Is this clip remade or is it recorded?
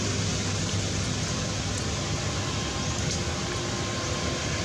recorded